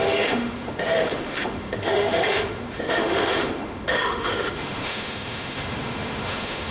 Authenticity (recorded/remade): remade